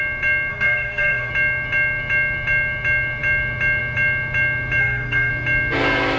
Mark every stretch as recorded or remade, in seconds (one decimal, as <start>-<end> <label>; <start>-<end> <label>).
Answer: 0.0-0.5 recorded; 0.5-1.3 remade; 1.3-4.8 recorded; 4.8-5.3 remade; 5.3-6.2 recorded